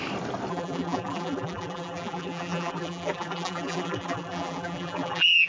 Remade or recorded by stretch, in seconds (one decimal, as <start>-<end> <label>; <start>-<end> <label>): 0.0-0.5 recorded; 0.5-5.5 remade